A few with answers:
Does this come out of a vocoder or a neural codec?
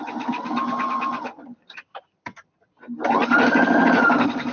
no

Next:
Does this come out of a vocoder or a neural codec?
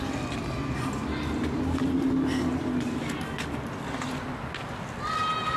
no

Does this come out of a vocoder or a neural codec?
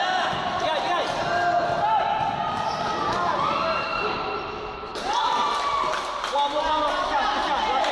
no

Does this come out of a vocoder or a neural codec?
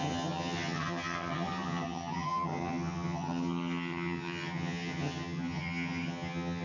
yes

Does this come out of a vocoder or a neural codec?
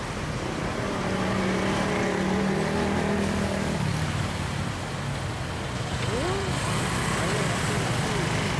no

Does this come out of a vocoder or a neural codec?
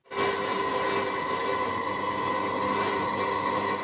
no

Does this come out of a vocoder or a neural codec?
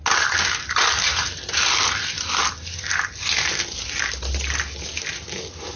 no